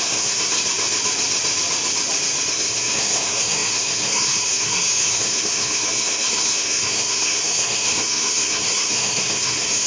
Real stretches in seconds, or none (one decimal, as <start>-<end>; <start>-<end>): 0.6-2.5